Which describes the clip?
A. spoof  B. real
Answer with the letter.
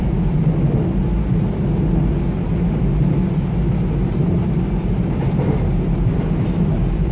B